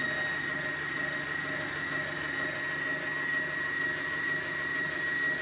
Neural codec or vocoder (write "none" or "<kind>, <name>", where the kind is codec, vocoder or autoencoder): none